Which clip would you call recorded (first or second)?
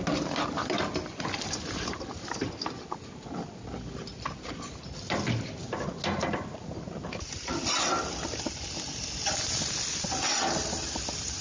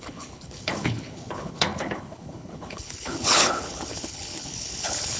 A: first